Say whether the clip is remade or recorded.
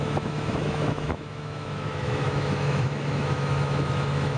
remade